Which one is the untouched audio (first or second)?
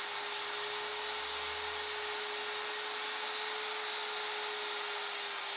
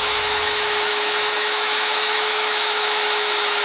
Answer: first